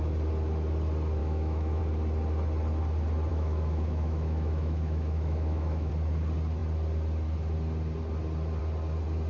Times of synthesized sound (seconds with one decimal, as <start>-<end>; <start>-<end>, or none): 1.2-1.8; 3.3-5.9